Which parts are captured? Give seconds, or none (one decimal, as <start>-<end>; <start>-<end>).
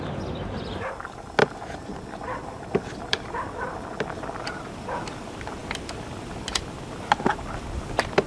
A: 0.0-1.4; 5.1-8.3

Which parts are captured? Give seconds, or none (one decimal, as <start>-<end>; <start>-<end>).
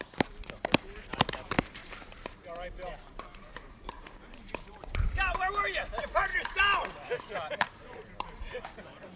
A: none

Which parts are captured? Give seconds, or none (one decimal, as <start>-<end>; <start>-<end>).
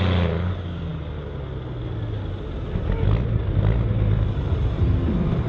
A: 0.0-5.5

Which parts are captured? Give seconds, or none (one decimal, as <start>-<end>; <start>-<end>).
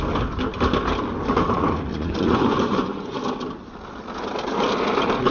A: 0.0-1.9; 3.2-5.3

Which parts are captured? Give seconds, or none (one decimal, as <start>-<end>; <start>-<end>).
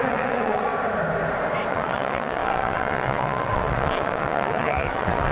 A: 0.7-1.7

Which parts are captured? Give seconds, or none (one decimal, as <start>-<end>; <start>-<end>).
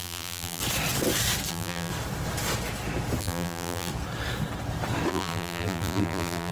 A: 0.6-1.5; 1.9-3.2; 3.9-5.1